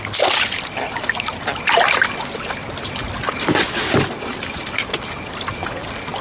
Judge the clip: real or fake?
real